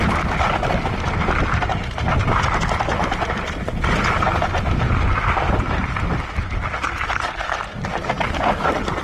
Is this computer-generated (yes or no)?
no